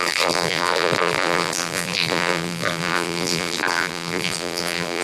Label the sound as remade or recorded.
remade